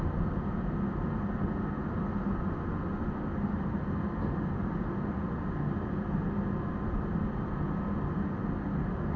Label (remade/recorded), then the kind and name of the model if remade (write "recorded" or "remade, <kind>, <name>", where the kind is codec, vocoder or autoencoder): recorded